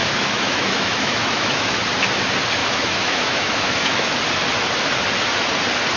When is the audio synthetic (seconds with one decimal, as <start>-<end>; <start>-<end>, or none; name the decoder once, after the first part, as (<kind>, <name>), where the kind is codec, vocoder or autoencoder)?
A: 0.0-1.8 (autoencoder, DAC-VAE); 2.6-4.1